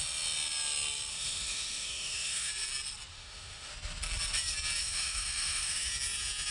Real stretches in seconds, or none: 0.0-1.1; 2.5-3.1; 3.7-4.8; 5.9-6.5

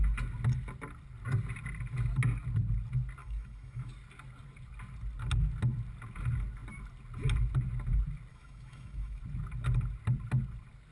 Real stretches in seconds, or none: 0.0-3.2; 3.9-8.3; 9.2-10.9

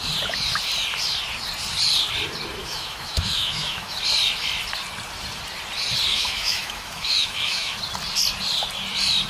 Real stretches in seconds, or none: 0.0-2.6; 4.0-6.1; 7.8-9.3

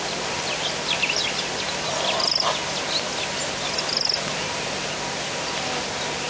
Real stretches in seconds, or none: 0.0-6.3

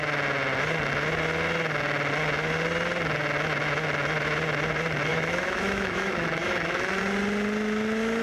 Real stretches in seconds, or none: 0.0-5.1; 7.0-8.2

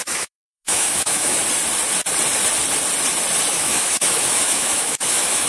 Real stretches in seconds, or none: 1.4-3.5

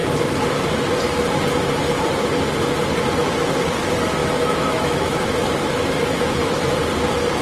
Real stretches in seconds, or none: 0.0-4.2; 6.8-7.4